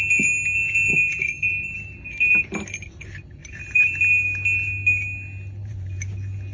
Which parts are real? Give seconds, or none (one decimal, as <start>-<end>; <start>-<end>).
0.0-0.9; 2.2-3.4; 4.0-5.6; 6.1-6.5